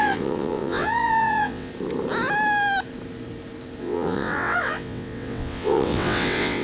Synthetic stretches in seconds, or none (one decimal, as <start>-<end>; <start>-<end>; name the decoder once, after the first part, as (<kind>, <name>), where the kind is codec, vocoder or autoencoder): 0.0-1.7 (vocoder, WaveNeXt); 3.8-6.6